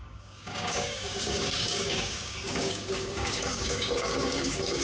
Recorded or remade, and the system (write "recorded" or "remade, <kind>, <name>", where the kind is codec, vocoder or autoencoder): remade, codec, DAC